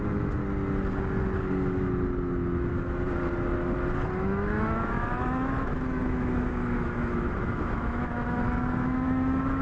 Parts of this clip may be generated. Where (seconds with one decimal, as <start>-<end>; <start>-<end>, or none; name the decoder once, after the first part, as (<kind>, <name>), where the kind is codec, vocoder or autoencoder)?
0.0-0.4 (autoencoder, DAC-VAE); 4.2-9.6